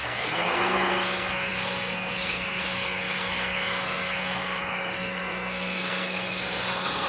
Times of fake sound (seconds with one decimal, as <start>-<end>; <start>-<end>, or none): 0.0-7.1